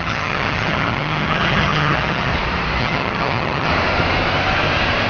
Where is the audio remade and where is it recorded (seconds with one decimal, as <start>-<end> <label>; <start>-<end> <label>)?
0.0-2.3 remade; 2.3-2.8 recorded; 2.8-3.7 remade; 3.7-5.1 recorded